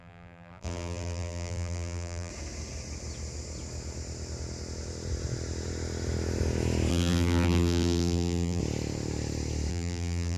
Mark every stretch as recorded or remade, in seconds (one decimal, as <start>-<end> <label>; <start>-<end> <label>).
0.0-2.3 remade; 2.3-6.9 recorded; 6.9-8.6 remade; 8.6-9.7 recorded; 9.7-10.4 remade